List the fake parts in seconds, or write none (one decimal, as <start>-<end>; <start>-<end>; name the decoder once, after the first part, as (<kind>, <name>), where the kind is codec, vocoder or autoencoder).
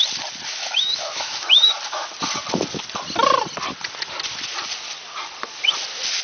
0.5-1.7 (autoencoder, DAC-VAE)